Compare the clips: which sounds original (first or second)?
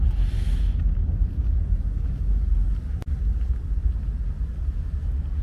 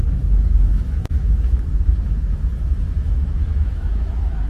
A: first